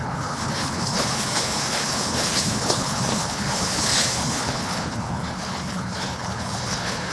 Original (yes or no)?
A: no